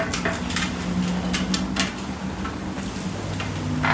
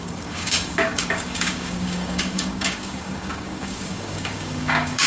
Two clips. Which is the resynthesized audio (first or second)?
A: second